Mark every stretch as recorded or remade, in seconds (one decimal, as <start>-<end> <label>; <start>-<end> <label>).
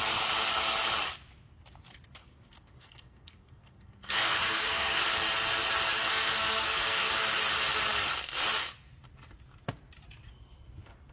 0.0-2.2 recorded; 2.2-5.1 remade; 5.1-6.1 recorded; 6.1-7.1 remade; 7.1-11.1 recorded